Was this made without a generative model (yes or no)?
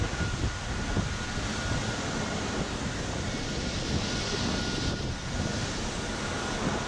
yes